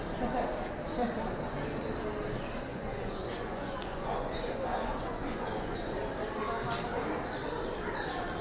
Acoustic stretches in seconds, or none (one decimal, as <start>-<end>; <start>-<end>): 0.0-2.7; 6.0-8.4